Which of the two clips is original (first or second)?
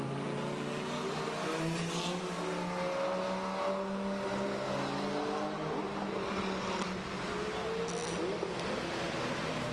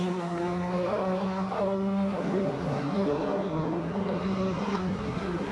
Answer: first